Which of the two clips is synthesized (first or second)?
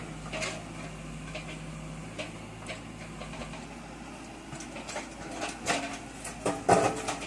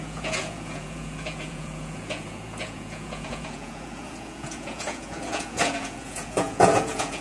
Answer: second